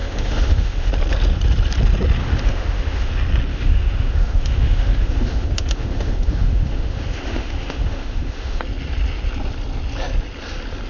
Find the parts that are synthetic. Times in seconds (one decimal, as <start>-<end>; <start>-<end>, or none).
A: 0.0-0.9; 2.2-3.1; 3.5-8.6